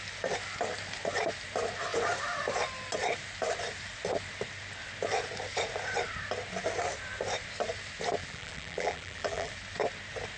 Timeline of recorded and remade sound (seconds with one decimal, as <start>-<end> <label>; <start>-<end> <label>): 0.0-8.2 recorded; 8.2-9.5 remade; 9.5-10.4 recorded